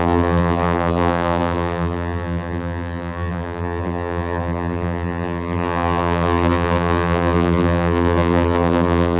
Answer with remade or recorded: remade